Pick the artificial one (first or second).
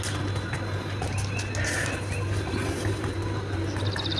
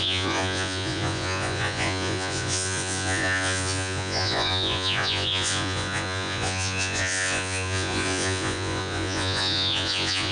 second